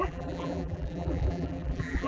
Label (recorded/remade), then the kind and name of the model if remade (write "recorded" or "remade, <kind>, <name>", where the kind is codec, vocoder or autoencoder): remade, vocoder, BigVGAN v2